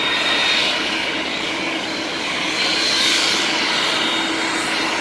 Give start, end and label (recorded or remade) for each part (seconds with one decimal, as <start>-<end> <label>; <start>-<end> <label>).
0.0-0.6 recorded; 0.6-3.6 remade; 3.6-5.0 recorded